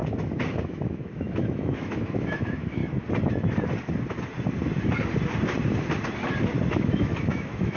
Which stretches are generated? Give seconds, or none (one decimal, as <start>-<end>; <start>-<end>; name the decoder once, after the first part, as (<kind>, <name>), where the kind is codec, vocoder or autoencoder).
0.0-2.8 (autoencoder, DAC-VAE); 6.7-7.8